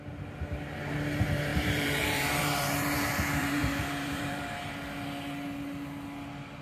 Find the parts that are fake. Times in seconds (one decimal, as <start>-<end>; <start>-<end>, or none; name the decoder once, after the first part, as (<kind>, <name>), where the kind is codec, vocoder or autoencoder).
1.5-4.6 (vocoder, BigVGAN v2)

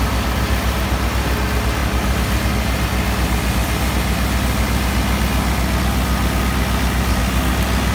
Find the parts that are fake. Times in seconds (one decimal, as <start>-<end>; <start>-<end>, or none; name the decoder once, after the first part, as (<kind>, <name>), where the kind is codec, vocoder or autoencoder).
none

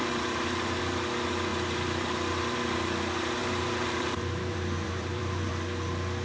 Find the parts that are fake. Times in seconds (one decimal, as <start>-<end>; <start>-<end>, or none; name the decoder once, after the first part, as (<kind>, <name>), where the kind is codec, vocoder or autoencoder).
0.0-0.8 (vocoder, BigVGAN v2); 1.5-2.1; 3.4-5.5

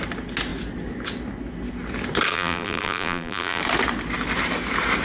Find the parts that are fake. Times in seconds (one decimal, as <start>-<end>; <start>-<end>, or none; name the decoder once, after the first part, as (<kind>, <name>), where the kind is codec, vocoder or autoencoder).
2.3-3.6 (vocoder, BigVGAN v2)